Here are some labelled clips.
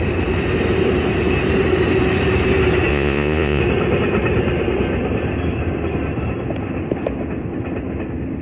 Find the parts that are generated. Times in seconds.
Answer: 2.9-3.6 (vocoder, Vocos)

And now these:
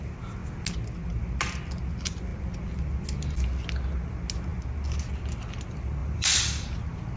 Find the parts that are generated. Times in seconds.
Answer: 6.0-6.7 (vocoder, BigVGAN v2)

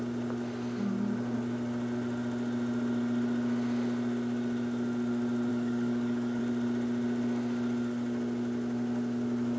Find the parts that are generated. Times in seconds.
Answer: 5.5-6.4 (codec, DAC)

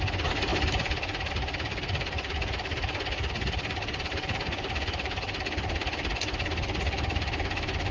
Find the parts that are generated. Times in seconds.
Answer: none